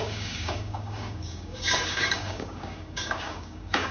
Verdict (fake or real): fake